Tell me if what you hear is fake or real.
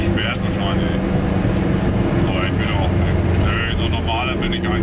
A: real